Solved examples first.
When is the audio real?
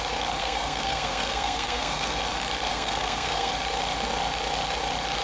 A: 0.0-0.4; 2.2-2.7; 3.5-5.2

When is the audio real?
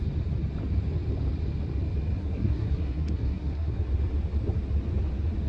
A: 0.0-2.2; 3.8-5.5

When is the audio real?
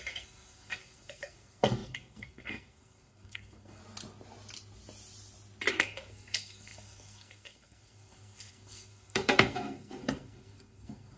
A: 3.8-5.7